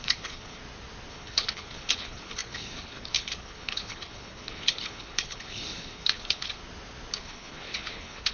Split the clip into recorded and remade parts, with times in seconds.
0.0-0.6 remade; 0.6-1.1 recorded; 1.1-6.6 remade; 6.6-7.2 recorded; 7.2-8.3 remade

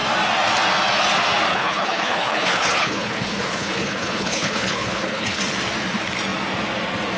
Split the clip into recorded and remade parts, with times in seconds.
0.0-1.5 recorded; 1.5-5.4 remade; 5.4-7.2 recorded

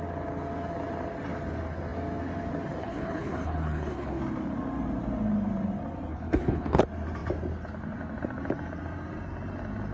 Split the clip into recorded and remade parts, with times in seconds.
0.0-2.8 recorded; 2.8-4.2 remade; 4.2-6.1 recorded; 6.1-6.8 remade; 6.8-9.9 recorded

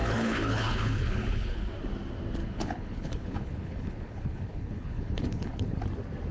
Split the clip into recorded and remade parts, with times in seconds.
0.0-1.7 remade; 1.7-2.4 recorded; 2.4-5.8 remade; 5.8-6.3 recorded